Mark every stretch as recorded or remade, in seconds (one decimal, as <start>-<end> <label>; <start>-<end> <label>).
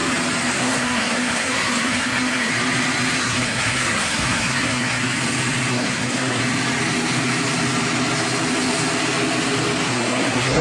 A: 0.0-0.6 recorded; 0.6-2.5 remade; 2.5-3.2 recorded; 3.2-5.0 remade; 5.0-5.7 recorded; 5.7-6.4 remade; 6.4-9.9 recorded; 9.9-10.6 remade